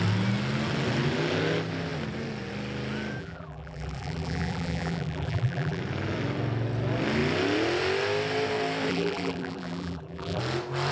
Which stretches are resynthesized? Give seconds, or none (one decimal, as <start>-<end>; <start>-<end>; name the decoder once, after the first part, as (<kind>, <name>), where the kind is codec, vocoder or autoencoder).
3.2-5.8 (vocoder, BigVGAN v2); 8.9-10.4